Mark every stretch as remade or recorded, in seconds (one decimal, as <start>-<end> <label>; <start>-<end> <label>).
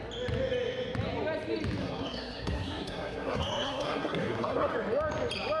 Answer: 0.0-1.8 recorded; 1.8-4.7 remade; 4.7-5.6 recorded